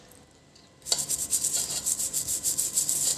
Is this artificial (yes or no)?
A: no